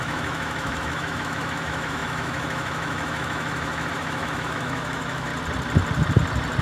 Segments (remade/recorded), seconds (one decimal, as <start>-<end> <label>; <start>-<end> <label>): 0.0-5.3 remade; 5.3-6.6 recorded